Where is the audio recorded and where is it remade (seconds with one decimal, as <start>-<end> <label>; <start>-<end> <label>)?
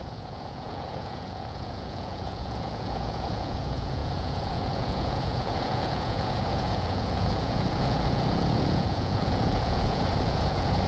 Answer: 0.0-10.9 remade